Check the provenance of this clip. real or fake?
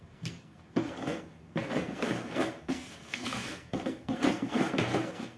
fake